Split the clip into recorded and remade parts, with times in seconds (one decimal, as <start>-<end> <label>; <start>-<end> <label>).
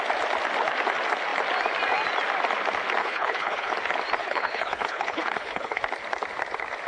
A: 0.0-3.0 recorded; 3.0-3.7 remade; 3.7-4.2 recorded; 4.2-5.8 remade; 5.8-6.9 recorded